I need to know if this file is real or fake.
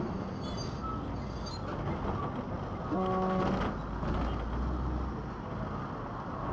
real